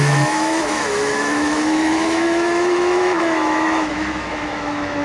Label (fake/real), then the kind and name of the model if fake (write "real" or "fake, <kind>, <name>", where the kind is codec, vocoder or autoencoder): fake, autoencoder, DAC-VAE